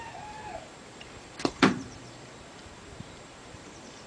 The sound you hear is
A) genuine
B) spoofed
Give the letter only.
B